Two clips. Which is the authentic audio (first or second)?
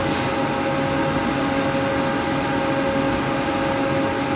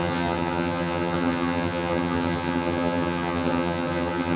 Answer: first